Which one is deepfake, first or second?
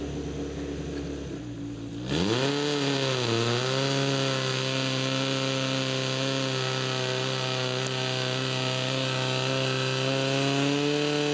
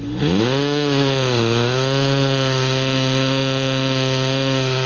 second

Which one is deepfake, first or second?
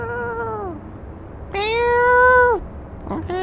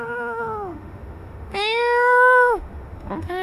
second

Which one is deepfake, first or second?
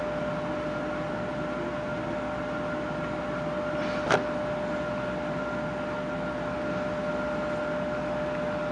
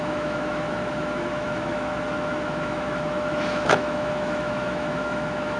second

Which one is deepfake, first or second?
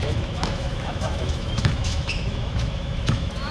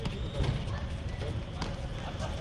first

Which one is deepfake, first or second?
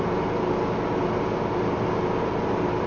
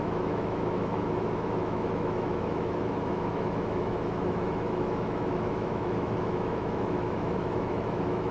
second